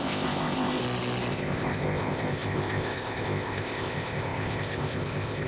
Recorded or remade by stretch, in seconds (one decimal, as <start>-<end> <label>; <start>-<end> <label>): 0.0-0.8 remade; 0.8-1.3 recorded; 1.3-5.5 remade